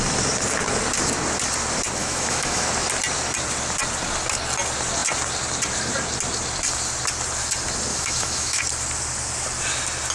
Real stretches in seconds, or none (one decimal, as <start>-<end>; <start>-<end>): 0.0-2.0; 2.7-7.9; 8.6-10.1